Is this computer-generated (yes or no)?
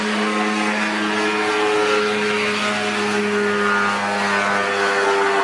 no